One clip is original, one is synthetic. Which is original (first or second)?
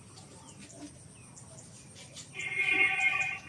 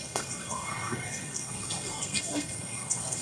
first